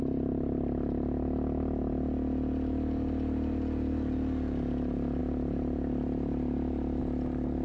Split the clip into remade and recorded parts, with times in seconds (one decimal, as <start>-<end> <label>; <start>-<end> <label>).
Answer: 0.0-7.6 recorded